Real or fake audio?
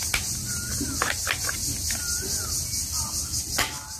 real